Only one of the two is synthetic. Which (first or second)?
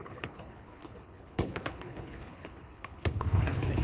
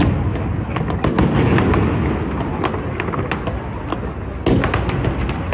first